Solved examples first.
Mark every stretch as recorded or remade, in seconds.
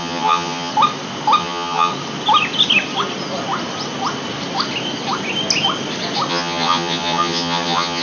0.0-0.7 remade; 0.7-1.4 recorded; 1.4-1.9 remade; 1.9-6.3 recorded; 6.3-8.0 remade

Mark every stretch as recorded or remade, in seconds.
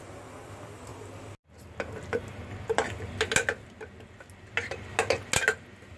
0.0-6.0 recorded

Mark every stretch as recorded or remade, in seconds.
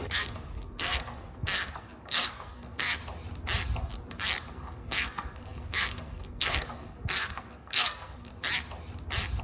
0.0-3.0 remade; 3.0-4.5 recorded; 4.5-8.3 remade; 8.3-9.4 recorded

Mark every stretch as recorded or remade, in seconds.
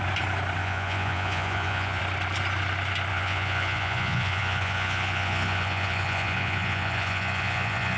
0.0-0.6 recorded; 0.6-2.0 remade; 2.0-3.1 recorded; 3.1-8.0 remade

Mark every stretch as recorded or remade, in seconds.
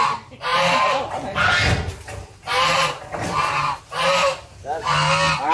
0.0-5.5 recorded